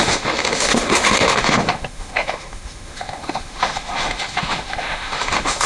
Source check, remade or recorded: remade